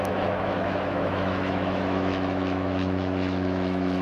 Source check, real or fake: fake